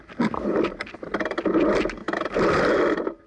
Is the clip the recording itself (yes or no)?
yes